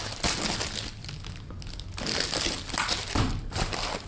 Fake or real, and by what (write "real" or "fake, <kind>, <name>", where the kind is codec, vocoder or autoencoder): real